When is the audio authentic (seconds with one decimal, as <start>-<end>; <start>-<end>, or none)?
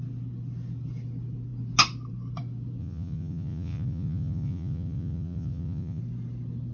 0.0-2.8; 6.0-6.7